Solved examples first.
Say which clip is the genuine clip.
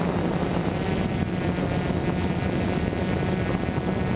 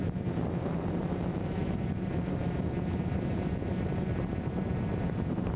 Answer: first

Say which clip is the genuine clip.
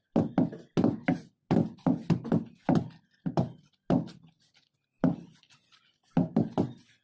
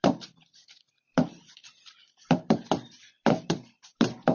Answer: first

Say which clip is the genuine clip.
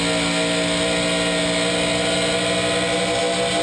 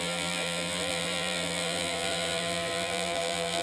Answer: first